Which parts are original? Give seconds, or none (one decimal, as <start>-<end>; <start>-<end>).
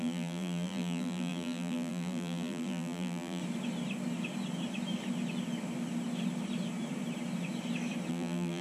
3.4-8.1